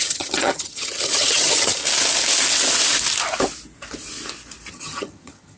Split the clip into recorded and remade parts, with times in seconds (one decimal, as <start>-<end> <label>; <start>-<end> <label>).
0.0-1.8 remade; 1.8-4.7 recorded; 4.7-5.6 remade